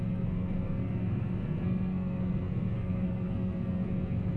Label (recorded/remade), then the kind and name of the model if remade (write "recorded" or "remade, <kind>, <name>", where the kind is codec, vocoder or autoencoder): remade, codec, SNAC